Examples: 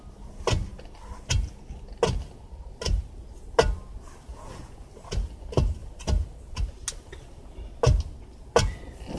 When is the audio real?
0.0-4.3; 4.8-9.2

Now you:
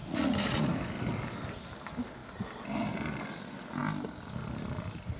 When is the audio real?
0.7-5.2

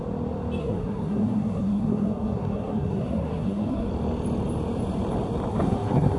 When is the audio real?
0.0-0.6; 3.9-5.5

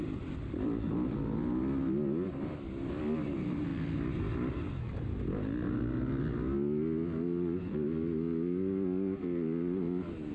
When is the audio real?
0.0-10.3

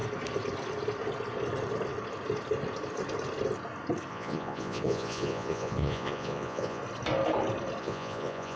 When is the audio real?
0.0-4.1; 6.8-7.8